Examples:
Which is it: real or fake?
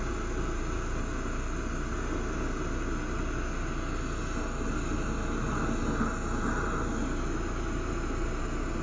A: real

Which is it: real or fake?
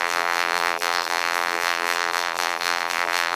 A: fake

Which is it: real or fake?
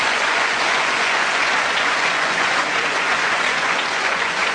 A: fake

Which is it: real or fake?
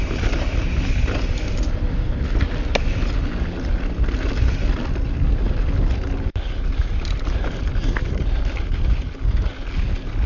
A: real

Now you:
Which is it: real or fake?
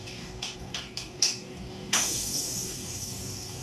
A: fake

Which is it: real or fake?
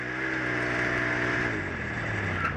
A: real